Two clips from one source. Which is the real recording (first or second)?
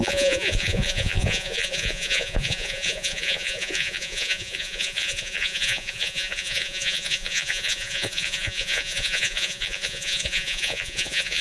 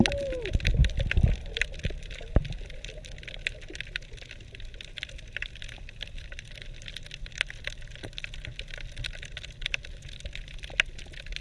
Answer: second